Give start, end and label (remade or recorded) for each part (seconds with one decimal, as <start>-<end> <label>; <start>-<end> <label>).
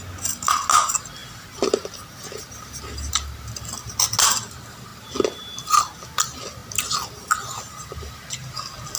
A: 0.0-9.0 recorded